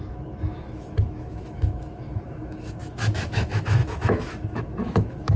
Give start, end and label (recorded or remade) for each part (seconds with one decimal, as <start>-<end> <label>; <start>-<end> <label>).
0.0-5.4 remade